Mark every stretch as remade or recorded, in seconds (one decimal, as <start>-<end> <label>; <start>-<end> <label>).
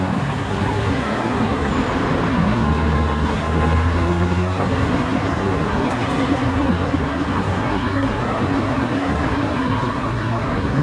0.0-1.7 remade; 1.7-2.3 recorded; 2.3-10.8 remade